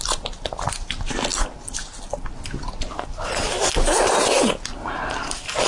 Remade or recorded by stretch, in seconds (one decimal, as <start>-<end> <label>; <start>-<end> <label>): 0.0-5.7 recorded